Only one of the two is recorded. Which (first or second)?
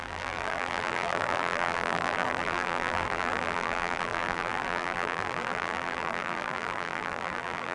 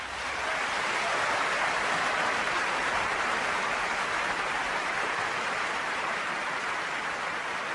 second